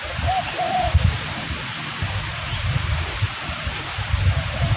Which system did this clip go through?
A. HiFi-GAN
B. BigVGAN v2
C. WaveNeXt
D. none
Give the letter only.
B